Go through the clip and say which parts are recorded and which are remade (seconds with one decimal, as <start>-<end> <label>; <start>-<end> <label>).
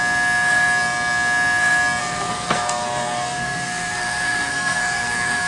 0.0-2.0 recorded; 2.0-5.5 remade